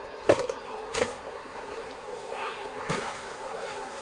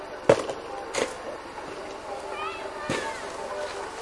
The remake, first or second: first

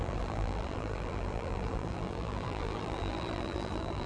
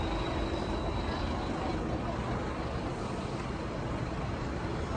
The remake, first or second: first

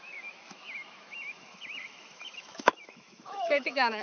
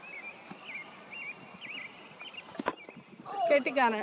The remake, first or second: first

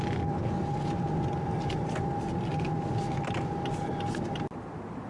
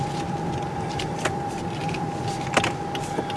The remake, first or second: second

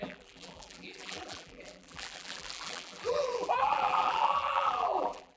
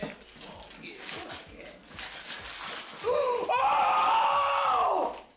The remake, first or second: first